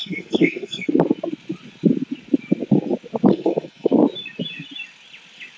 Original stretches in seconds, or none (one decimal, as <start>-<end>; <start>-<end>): 0.9-3.3; 3.9-5.6